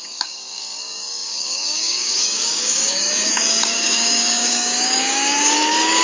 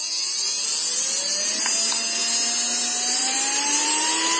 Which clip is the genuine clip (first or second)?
second